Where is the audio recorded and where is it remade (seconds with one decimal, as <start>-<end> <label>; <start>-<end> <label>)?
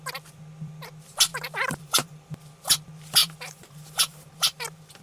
0.0-1.3 recorded; 1.3-2.4 remade; 2.4-3.2 recorded; 3.2-5.0 remade